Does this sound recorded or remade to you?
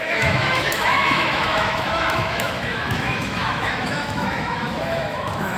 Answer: remade